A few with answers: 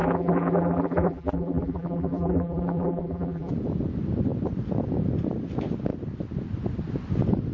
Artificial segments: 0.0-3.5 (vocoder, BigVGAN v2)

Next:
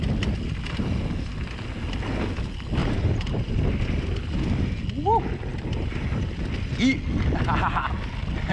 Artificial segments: 2.8-4.0 (vocoder, BigVGAN v2); 5.5-6.3